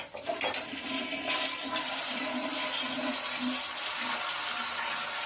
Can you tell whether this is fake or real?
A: real